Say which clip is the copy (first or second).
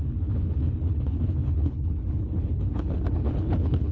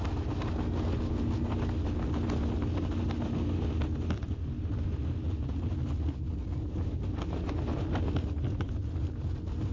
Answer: first